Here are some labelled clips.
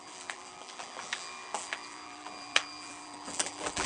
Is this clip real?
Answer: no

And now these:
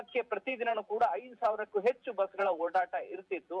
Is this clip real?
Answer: no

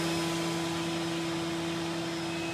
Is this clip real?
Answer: yes